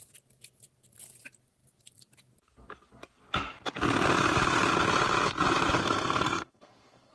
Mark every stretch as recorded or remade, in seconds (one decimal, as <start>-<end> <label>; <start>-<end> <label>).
0.0-5.8 recorded; 5.8-7.1 remade